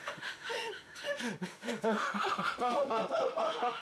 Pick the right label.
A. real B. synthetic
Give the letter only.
B